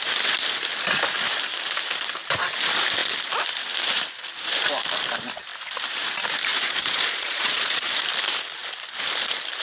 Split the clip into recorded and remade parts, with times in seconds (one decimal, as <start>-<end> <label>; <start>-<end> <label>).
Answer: 0.0-6.5 recorded; 6.5-7.9 remade; 7.9-9.6 recorded